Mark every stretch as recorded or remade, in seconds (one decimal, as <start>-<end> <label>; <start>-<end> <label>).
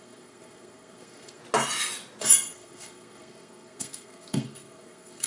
0.0-1.4 remade; 1.4-2.2 recorded; 2.2-5.3 remade